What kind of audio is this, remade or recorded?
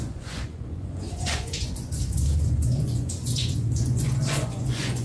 remade